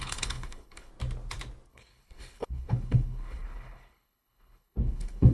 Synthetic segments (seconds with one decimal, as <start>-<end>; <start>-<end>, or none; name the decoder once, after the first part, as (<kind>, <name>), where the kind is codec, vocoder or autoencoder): 0.0-0.9 (codec, HILCodec); 1.7-5.3